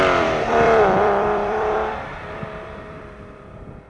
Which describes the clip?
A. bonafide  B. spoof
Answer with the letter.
B